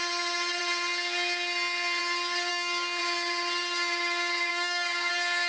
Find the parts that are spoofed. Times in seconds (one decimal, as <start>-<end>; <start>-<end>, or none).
2.5-3.0; 4.5-5.1